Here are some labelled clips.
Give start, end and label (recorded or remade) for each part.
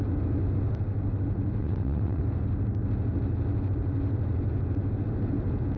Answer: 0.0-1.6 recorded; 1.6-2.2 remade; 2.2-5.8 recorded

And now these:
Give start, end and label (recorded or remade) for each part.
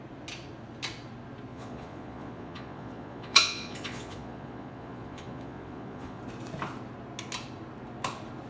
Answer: 0.0-1.5 recorded; 1.5-6.2 remade; 6.2-8.5 recorded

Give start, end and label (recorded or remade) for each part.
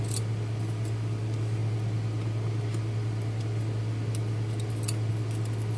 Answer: 0.0-1.6 remade; 1.6-5.1 recorded; 5.1-5.8 remade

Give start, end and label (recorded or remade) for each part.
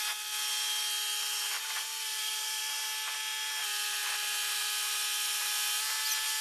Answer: 0.0-2.1 recorded; 2.1-2.6 remade; 2.6-6.4 recorded